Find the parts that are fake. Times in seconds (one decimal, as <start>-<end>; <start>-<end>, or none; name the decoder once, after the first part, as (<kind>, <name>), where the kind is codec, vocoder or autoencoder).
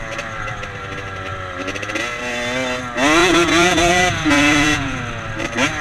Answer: 3.2-5.0 (vocoder, Vocos)